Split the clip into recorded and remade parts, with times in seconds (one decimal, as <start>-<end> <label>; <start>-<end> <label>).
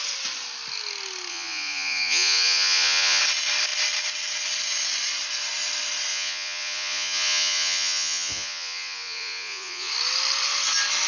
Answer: 0.0-1.3 recorded; 1.3-3.2 remade; 3.2-6.1 recorded; 6.1-9.9 remade; 9.9-11.1 recorded